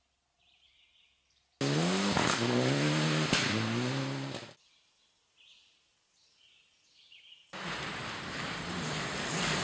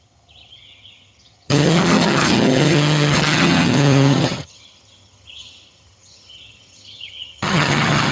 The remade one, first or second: second